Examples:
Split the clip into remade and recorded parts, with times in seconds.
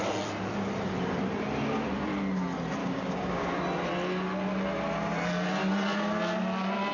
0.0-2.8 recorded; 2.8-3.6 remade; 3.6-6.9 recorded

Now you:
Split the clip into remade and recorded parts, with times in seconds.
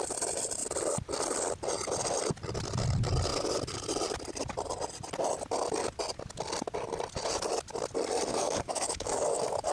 0.0-8.3 recorded; 8.3-9.7 remade